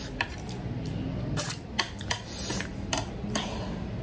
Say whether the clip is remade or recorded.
recorded